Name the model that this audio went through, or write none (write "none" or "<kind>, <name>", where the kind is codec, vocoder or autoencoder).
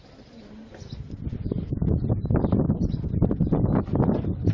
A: none